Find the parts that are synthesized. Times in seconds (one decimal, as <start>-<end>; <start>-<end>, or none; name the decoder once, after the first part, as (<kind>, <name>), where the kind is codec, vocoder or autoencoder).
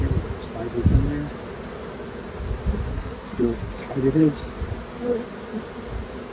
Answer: 2.9-3.7 (codec, SNAC)